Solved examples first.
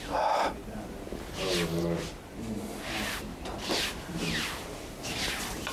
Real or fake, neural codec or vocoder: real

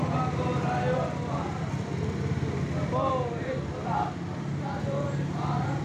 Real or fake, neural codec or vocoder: real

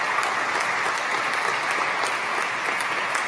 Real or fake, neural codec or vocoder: real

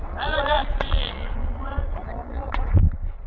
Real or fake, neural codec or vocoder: fake, vocoder, Vocos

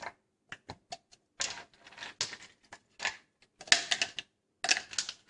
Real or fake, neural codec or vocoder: real